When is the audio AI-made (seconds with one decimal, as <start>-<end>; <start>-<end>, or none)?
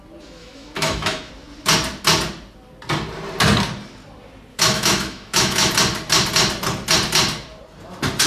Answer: 0.4-1.3; 4.5-5.7